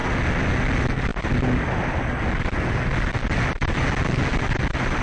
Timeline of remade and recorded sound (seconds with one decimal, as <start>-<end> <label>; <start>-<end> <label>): 0.0-5.0 recorded